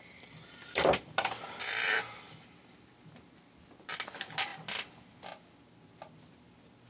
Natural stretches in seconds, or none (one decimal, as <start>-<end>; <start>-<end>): 0.0-6.9